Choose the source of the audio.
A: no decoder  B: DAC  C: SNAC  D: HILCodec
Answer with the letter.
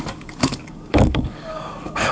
B